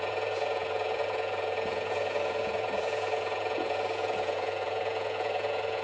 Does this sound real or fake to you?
fake